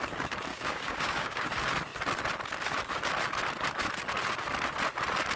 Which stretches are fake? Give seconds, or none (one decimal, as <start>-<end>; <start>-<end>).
0.5-1.5